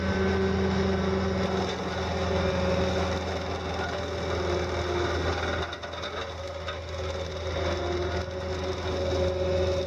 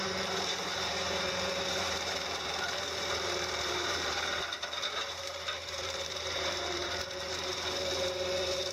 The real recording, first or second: first